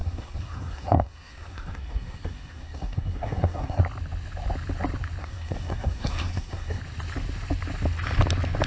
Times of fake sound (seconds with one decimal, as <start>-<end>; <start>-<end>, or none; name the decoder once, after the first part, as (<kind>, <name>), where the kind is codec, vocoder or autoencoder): 0.0-3.8 (codec, SNAC); 5.2-6.8